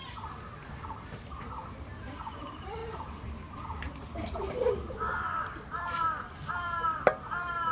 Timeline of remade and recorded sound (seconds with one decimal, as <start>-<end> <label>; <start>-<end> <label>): 0.0-0.7 recorded; 0.7-7.7 remade